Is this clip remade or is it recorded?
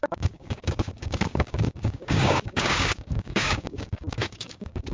remade